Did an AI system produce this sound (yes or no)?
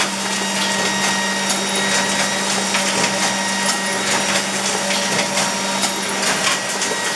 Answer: no